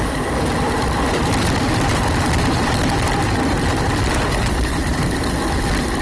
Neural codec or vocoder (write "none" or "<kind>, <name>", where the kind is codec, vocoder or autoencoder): vocoder, BigVGAN v2